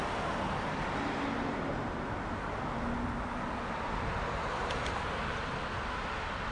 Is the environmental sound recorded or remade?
recorded